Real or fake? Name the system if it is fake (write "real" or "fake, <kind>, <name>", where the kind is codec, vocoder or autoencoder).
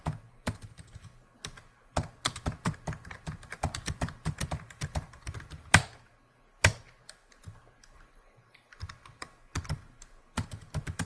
fake, vocoder, BigVGAN v2